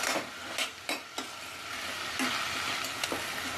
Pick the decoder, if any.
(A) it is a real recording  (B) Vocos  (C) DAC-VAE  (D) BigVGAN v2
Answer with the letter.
A